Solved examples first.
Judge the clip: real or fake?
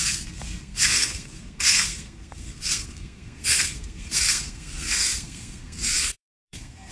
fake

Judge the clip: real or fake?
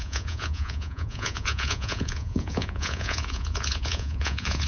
fake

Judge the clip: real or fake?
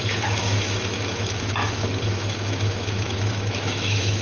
fake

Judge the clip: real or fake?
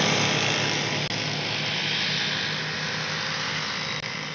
real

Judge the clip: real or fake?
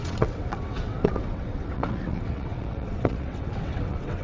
fake